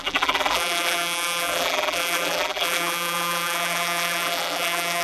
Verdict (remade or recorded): remade